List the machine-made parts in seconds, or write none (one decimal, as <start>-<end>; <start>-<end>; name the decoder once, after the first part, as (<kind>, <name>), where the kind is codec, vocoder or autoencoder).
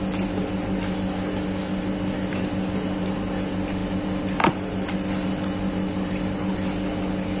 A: none